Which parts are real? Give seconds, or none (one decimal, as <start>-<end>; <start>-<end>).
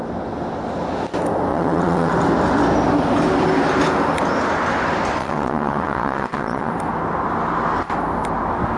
0.0-1.5; 2.1-5.2; 6.7-8.8